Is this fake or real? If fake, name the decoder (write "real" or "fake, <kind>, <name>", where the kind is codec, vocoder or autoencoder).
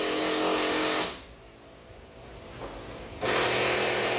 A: real